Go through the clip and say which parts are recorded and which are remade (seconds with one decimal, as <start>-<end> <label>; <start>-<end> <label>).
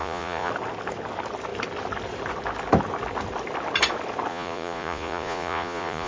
0.0-0.5 remade; 0.5-4.3 recorded; 4.3-6.1 remade